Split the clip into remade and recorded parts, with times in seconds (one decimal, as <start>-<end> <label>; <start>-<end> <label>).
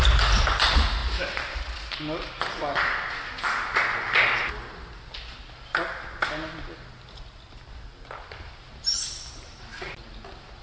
0.0-10.6 recorded